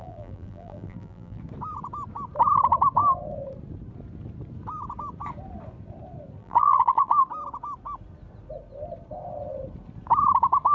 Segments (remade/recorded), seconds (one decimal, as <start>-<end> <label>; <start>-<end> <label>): 0.0-1.4 remade; 1.4-6.4 recorded; 6.4-7.2 remade; 7.2-10.7 recorded